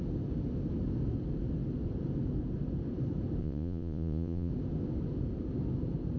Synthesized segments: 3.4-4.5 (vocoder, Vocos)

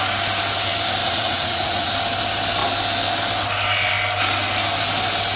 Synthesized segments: 1.0-1.9 (vocoder, Vocos)

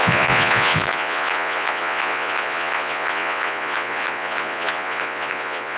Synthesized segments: 0.0-5.8 (vocoder, Vocos)

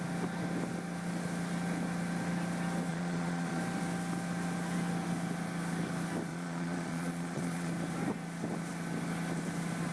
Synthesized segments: 2.9-3.6 (vocoder, Vocos); 6.3-7.7

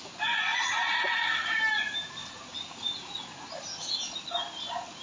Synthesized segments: 0.5-1.6 (vocoder, Vocos); 2.2-3.6

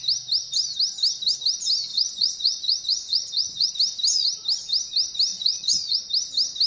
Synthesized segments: 1.9-3.7 (vocoder, Vocos); 5.3-6.0